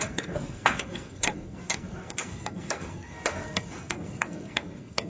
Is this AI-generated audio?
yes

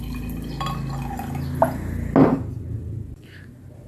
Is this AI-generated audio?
no